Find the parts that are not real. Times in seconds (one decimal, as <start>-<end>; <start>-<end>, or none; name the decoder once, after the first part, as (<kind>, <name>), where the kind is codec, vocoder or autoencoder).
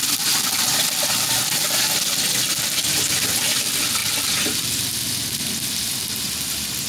none